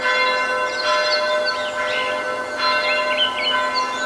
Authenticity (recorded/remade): recorded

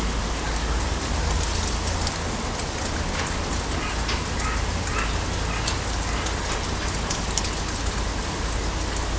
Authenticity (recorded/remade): recorded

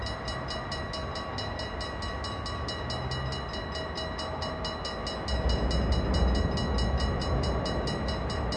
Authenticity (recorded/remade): recorded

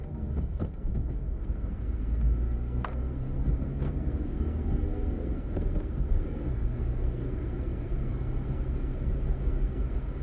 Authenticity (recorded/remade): remade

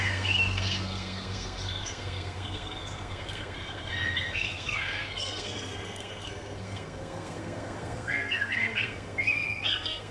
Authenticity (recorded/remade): remade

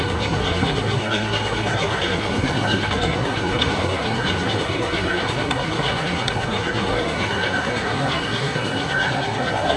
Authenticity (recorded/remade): remade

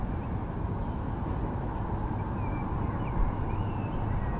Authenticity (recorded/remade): recorded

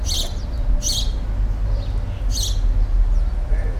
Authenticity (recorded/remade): recorded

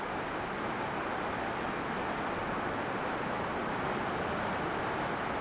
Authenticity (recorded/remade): recorded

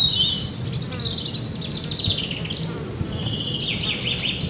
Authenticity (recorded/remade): recorded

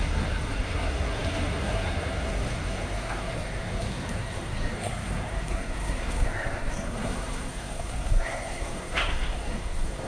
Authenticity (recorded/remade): remade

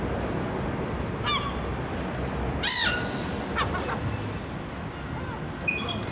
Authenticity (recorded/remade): recorded